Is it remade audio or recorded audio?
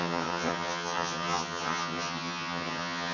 remade